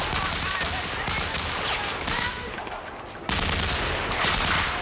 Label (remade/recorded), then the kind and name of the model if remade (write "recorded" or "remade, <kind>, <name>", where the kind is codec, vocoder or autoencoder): recorded